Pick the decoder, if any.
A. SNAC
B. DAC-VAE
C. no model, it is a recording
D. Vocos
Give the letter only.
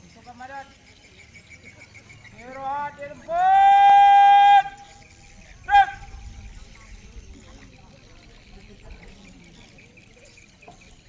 C